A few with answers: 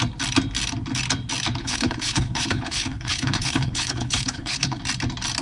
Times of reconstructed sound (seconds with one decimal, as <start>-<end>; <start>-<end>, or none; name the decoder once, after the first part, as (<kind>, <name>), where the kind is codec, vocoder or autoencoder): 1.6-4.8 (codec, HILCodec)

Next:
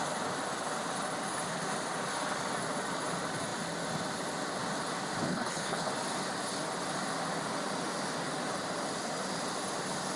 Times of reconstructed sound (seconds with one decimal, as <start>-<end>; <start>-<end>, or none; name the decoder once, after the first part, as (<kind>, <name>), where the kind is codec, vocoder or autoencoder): 5.3-5.9 (codec, HILCodec)

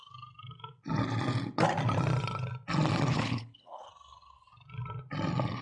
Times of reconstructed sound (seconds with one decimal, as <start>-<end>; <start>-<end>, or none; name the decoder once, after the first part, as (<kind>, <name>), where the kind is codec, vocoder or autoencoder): 3.1-3.9 (codec, HILCodec)

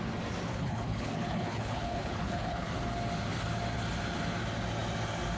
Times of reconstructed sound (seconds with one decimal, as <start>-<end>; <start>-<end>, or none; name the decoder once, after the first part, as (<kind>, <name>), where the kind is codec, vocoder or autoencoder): 0.5-2.7 (codec, HILCodec)

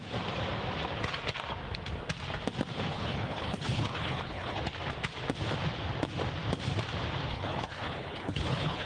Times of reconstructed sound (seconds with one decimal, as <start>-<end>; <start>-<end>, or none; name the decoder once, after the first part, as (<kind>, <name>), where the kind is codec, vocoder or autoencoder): 2.9-4.6 (codec, HILCodec); 7.3-8.9

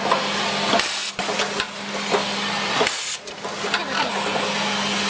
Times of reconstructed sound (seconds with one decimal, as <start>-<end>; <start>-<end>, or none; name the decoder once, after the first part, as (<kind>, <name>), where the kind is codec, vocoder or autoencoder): none

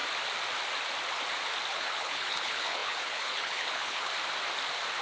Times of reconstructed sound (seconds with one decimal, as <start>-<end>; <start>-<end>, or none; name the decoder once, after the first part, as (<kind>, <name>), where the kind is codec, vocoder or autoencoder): 1.7-4.1 (codec, HILCodec)

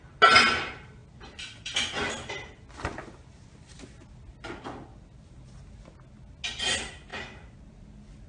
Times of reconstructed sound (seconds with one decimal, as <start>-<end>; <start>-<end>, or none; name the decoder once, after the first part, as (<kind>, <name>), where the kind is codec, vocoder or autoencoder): none